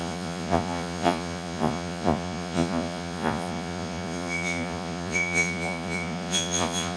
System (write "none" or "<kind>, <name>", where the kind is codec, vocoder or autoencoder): vocoder, Vocos